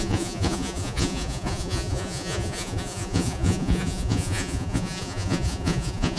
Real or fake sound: fake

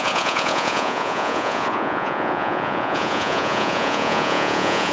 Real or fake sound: fake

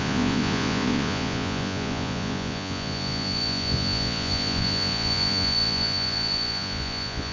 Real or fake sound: fake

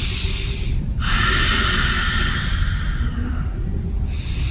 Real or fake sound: real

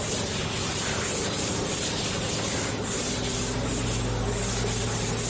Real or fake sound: real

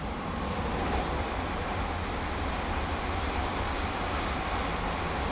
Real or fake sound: real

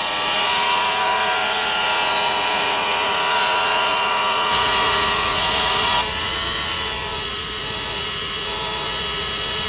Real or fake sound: fake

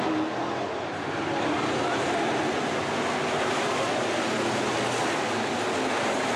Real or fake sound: real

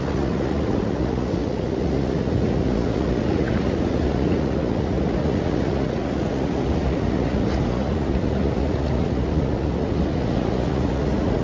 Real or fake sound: fake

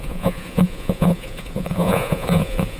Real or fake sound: fake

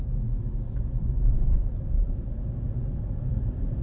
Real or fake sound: real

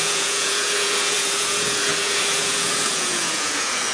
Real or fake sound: fake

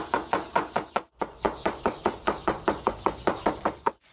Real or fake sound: fake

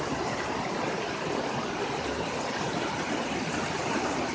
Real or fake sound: real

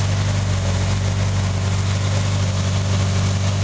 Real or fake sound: real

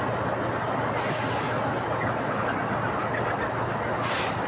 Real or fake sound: real